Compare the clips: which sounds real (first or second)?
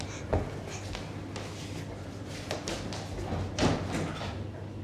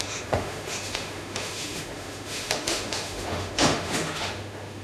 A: first